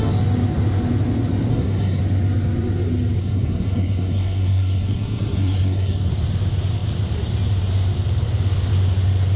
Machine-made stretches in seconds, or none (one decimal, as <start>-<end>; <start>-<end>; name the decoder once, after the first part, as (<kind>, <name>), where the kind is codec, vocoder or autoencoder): 1.5-2.0 (codec, SNAC); 3.2-6.1